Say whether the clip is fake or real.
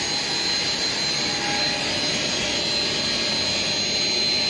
real